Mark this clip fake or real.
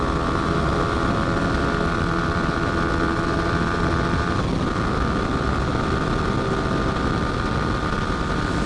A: real